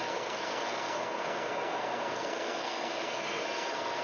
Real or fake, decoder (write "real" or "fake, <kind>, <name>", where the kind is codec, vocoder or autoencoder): fake, codec, SNAC